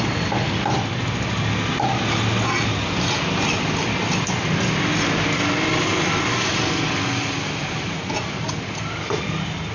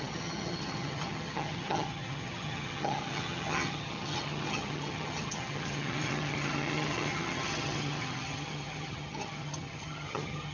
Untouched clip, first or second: first